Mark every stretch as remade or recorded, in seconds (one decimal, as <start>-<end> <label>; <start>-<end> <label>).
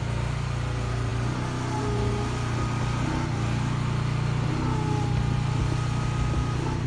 0.0-6.9 recorded